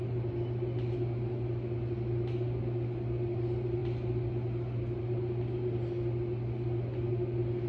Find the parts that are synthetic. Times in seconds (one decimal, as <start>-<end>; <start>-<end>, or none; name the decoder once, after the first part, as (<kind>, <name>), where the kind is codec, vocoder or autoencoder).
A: none